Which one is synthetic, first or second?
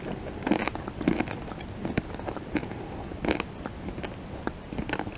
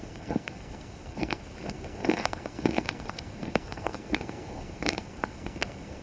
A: second